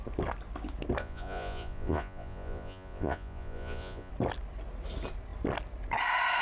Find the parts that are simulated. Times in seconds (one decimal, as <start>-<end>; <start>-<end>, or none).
1.0-4.1